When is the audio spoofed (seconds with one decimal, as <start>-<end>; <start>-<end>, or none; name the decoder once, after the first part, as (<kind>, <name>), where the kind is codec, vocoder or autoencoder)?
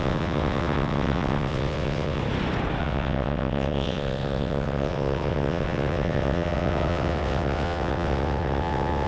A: 0.0-2.2 (vocoder, WaveNeXt); 2.8-9.1